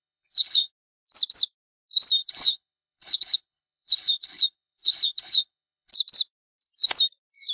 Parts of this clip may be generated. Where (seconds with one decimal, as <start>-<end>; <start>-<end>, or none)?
0.0-0.7; 2.2-5.9